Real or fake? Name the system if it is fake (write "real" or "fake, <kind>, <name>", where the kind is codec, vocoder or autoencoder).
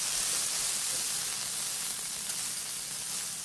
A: real